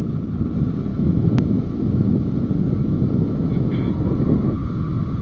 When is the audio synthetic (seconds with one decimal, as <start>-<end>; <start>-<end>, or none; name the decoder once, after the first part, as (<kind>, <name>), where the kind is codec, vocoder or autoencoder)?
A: 0.9-2.4 (autoencoder, DAC-VAE); 2.8-3.7